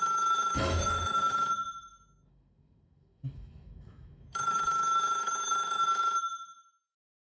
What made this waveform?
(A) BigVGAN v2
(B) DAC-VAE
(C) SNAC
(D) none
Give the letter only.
B